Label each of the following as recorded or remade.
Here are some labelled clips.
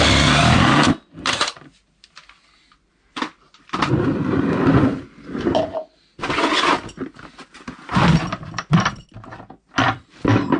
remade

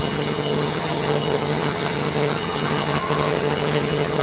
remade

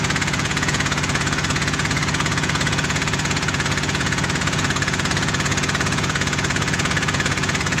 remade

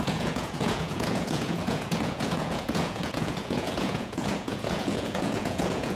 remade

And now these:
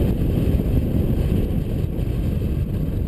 recorded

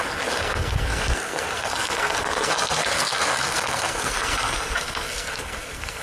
remade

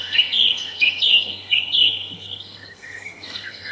remade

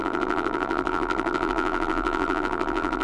remade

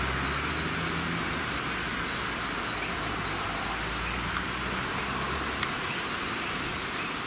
recorded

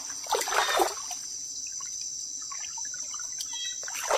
recorded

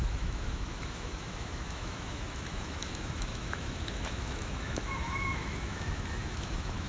remade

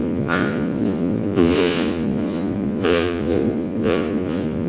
remade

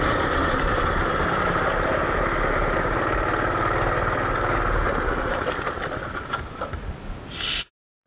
recorded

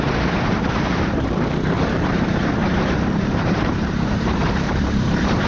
remade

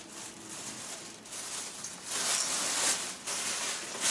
recorded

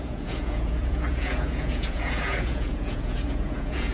remade